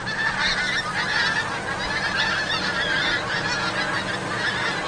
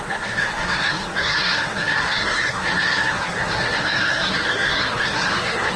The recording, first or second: first